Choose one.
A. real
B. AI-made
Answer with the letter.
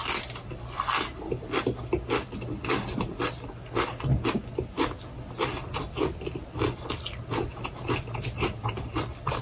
A